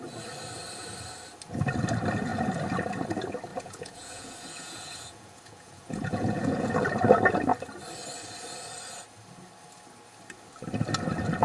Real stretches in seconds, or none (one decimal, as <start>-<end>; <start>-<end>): 0.0-3.5; 6.7-11.4